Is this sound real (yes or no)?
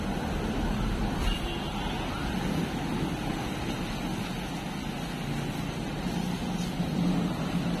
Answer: yes